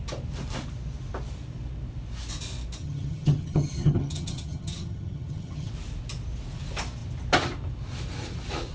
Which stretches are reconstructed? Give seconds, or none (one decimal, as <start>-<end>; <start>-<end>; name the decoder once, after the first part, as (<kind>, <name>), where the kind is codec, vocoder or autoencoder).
2.8-5.7 (vocoder, HiFi-GAN)